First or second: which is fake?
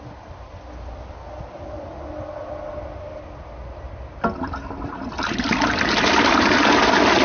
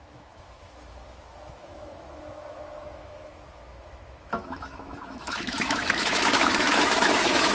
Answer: second